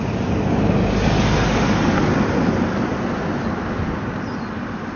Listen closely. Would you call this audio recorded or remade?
recorded